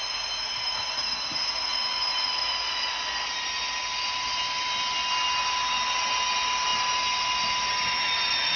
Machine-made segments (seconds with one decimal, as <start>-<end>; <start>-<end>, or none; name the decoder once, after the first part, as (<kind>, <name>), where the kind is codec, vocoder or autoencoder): none